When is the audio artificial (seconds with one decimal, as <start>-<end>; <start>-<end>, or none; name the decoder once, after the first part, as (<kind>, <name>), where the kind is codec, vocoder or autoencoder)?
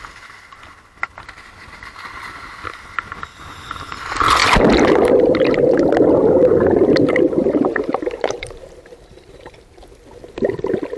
7.4-9.8 (vocoder, BigVGAN v2)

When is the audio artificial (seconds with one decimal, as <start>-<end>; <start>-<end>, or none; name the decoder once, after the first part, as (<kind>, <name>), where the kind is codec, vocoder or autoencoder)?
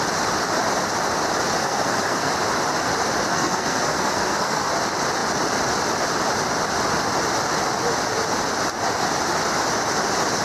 1.6-2.3 (codec, SNAC); 3.3-4.6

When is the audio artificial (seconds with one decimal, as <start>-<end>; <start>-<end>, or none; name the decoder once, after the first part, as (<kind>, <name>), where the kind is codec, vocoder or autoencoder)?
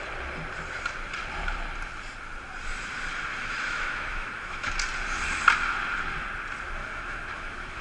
3.3-4.7 (autoencoder, DAC-VAE); 6.8-7.8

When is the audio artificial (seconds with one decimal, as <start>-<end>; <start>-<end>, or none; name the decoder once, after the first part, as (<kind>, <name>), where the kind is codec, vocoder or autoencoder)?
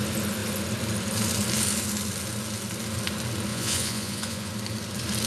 3.5-4.5 (vocoder, Vocos)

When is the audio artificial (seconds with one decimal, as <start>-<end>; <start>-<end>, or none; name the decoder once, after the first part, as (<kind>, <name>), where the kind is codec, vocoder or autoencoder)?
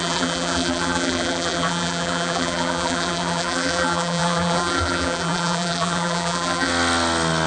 0.0-6.7 (vocoder, BigVGAN v2)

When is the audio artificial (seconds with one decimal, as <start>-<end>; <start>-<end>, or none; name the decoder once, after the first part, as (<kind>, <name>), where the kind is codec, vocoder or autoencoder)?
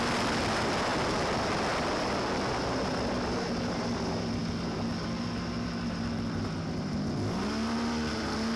0.0-0.9 (vocoder, BigVGAN v2); 2.9-4.4; 5.8-8.6